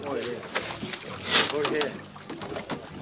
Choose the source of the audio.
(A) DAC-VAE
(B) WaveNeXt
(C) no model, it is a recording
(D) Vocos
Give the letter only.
C